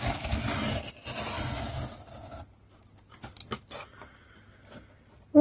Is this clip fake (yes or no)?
no